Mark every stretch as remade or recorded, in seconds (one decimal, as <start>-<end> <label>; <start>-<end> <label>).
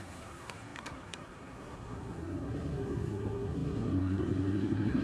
0.0-5.0 remade